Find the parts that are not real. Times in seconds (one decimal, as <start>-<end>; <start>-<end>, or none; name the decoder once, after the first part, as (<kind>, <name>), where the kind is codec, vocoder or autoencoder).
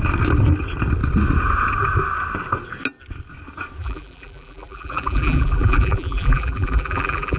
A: 3.8-7.4 (vocoder, BigVGAN v2)